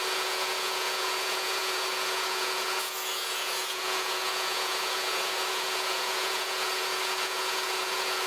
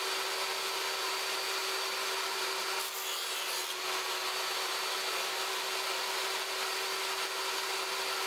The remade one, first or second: first